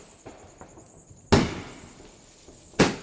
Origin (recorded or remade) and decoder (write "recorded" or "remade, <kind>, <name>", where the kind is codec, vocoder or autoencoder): recorded